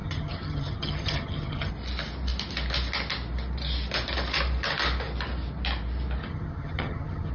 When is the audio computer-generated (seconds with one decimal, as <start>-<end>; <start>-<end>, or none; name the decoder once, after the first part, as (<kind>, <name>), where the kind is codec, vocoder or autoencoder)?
0.0-1.7 (vocoder, HiFi-GAN); 6.2-7.3